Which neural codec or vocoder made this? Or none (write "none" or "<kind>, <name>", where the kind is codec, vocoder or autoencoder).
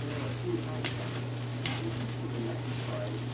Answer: none